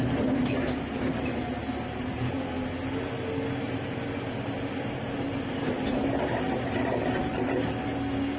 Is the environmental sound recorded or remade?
recorded